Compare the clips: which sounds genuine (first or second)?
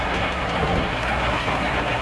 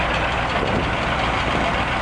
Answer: second